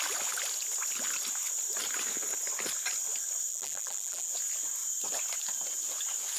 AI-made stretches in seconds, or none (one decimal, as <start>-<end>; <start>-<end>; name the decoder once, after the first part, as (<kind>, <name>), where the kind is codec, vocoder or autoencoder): 3.5-4.3 (vocoder, BigVGAN v2)